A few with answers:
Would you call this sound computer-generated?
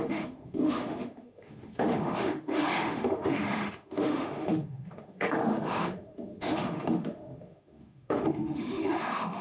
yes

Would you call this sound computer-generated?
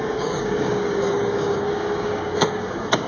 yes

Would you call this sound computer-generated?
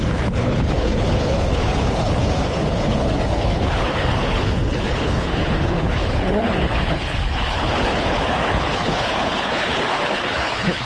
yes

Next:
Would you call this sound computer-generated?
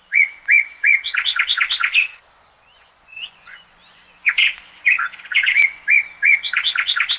yes